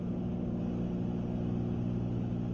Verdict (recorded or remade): recorded